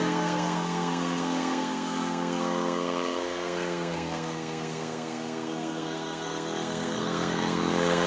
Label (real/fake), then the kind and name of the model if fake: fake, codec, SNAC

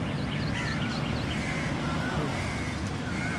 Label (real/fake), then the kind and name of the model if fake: real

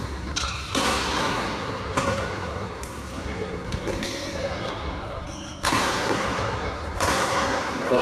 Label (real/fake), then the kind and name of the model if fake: fake, codec, SNAC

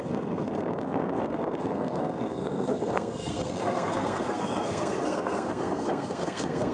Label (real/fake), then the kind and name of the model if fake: fake, codec, SNAC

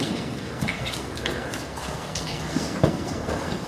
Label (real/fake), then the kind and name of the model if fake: fake, codec, SNAC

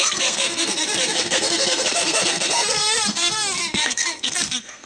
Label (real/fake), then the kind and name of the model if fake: fake, codec, SNAC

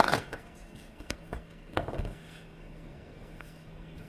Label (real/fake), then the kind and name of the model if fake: fake, codec, SNAC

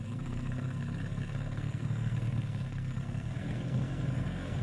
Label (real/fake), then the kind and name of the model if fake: fake, codec, SNAC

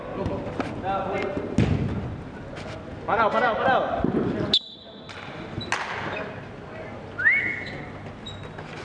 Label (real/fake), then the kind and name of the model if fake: real